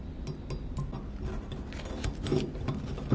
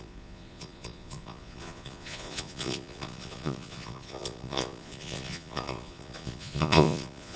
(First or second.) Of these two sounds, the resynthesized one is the second